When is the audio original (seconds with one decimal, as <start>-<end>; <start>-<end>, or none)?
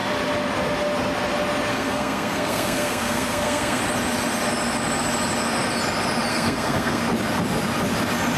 0.0-1.7; 3.8-6.3; 7.0-8.4